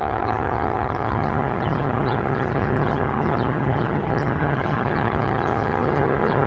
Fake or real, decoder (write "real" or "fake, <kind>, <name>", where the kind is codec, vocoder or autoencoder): fake, vocoder, HiFi-GAN